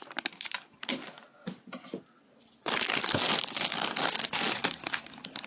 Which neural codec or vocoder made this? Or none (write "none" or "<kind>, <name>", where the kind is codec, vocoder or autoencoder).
none